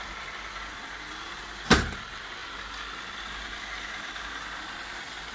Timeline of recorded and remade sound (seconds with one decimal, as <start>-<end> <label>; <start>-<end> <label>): 0.0-5.3 recorded